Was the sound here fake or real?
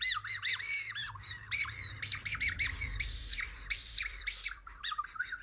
fake